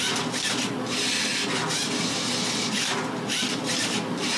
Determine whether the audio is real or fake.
real